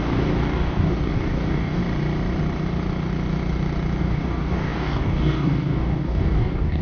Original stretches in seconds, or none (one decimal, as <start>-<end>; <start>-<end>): 1.8-4.0